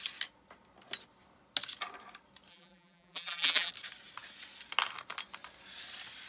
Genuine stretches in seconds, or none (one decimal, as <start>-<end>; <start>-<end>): 0.0-2.5; 3.7-6.3